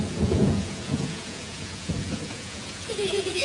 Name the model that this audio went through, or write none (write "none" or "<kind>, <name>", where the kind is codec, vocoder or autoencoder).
vocoder, Vocos